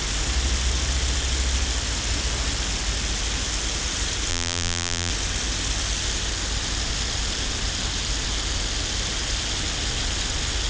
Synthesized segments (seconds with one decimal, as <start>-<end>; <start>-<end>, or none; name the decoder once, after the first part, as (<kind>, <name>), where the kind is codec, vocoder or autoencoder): 4.3-5.1 (vocoder, BigVGAN v2)